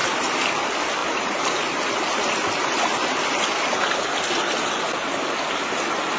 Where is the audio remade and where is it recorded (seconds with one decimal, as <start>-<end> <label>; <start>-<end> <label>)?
0.0-6.2 recorded